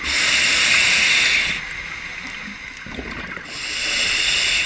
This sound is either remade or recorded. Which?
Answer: recorded